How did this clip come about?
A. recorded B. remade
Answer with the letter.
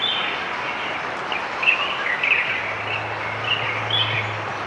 A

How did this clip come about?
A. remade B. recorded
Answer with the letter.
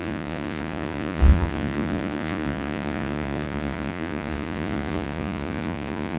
A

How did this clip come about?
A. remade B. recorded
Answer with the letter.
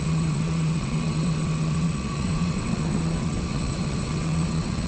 A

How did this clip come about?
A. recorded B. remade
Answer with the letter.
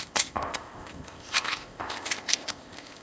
B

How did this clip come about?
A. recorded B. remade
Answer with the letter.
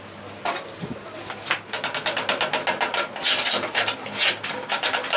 A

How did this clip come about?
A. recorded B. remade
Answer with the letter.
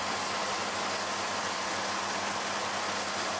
A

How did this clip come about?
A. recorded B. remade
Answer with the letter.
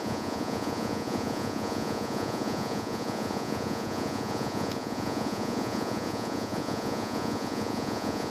B